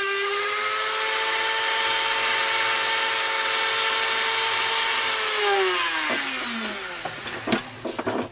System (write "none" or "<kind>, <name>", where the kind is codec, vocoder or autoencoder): none